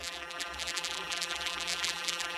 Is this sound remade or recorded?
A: remade